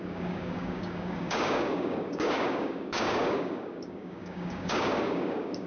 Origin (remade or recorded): remade